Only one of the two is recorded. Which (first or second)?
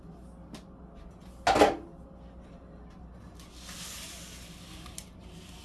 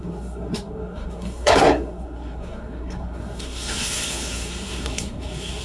first